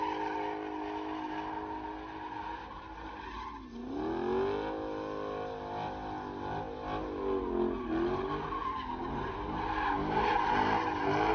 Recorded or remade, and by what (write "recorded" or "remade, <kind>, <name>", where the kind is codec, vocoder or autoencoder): recorded